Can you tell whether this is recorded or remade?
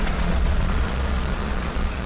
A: remade